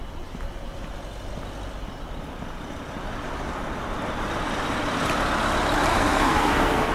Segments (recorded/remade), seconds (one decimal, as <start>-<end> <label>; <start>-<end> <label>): 0.0-5.9 recorded; 5.9-6.9 remade